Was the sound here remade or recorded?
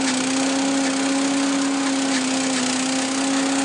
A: recorded